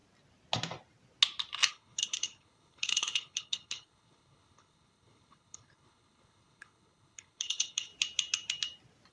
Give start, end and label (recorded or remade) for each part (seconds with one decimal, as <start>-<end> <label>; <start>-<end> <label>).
0.0-1.7 recorded; 1.7-7.9 remade; 7.9-9.1 recorded

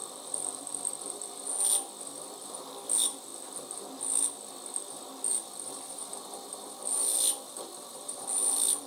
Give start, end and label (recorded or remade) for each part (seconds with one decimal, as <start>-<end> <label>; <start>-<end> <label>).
0.0-3.3 remade; 3.3-5.3 recorded; 5.3-6.0 remade; 6.0-6.6 recorded; 6.6-8.4 remade; 8.4-8.9 recorded

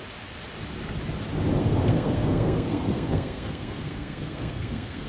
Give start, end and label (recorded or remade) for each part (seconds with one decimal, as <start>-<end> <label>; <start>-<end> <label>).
0.0-1.6 recorded; 1.6-5.1 remade

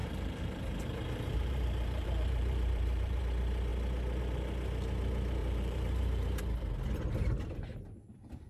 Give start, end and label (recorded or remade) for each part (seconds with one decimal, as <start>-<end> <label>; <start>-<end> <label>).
0.0-3.2 remade; 3.2-5.4 recorded; 5.4-6.4 remade; 6.4-8.5 recorded

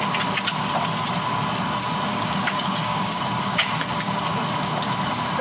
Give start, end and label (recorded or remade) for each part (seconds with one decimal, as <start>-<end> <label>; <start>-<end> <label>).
0.0-2.1 recorded; 2.1-3.2 remade; 3.2-5.4 recorded